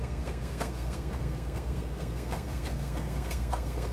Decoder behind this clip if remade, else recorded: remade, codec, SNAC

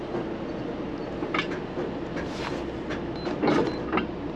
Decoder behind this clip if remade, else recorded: recorded